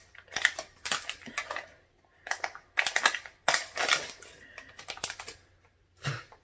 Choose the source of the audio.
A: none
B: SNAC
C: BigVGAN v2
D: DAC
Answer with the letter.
A